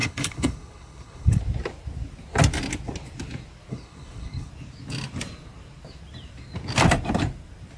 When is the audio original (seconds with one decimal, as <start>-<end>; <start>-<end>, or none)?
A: 1.4-3.7; 4.5-7.8